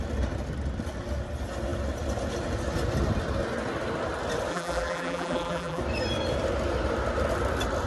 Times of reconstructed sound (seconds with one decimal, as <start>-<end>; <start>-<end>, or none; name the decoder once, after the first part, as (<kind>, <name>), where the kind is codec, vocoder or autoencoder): 4.5-5.8 (vocoder, BigVGAN v2)